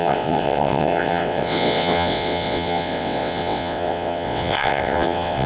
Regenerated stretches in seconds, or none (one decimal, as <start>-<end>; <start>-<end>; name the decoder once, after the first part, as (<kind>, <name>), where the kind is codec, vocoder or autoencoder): 0.0-5.5 (vocoder, WaveNeXt)